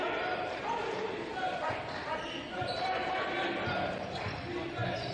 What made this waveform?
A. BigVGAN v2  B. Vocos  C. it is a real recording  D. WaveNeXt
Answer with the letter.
C